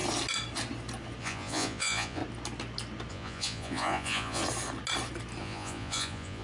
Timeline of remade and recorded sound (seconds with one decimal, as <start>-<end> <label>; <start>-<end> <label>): 0.0-1.2 recorded; 1.2-2.2 remade; 2.2-3.1 recorded; 3.1-4.4 remade; 4.4-5.4 recorded; 5.4-6.4 remade